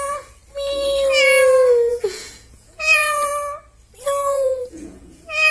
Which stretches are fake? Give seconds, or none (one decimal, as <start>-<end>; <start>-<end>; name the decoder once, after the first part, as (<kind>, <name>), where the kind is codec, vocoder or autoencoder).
0.0-0.4 (vocoder, Vocos); 1.9-3.3; 4.0-5.5